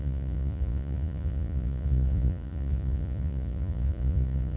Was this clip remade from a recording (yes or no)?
yes